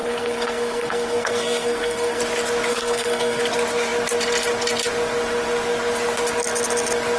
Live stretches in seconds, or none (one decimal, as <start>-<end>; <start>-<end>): 2.2-2.7; 3.4-7.2